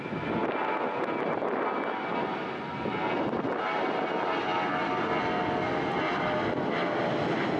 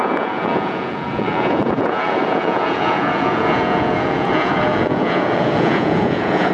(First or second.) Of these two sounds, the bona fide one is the first